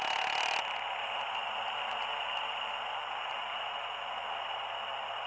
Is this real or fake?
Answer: real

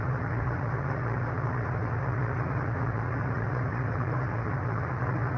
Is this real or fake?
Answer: fake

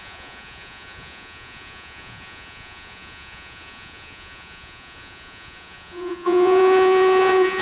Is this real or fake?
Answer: fake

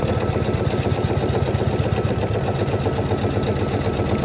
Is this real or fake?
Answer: real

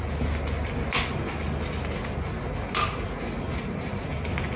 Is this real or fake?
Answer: real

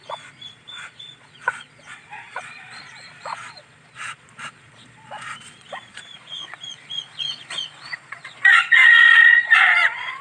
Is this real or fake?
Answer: fake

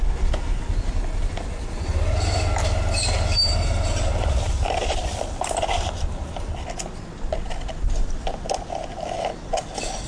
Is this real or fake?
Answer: real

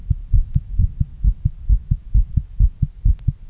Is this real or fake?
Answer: real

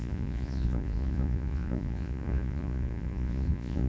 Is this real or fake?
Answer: fake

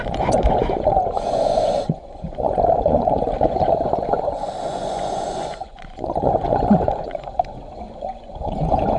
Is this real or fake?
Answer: fake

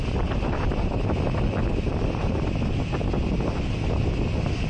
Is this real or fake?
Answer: real